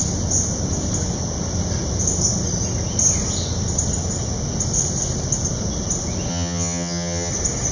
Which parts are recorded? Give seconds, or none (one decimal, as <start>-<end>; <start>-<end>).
0.0-6.3; 7.3-7.7